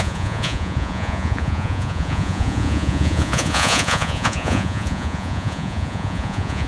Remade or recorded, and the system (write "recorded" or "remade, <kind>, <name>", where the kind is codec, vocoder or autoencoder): remade, vocoder, Vocos